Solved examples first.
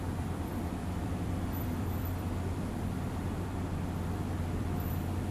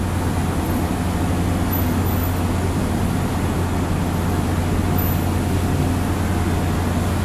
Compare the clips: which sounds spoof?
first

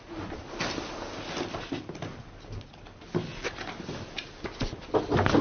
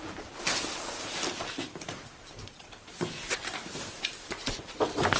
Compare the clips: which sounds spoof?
second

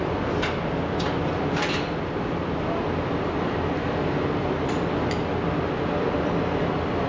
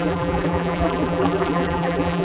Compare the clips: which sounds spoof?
second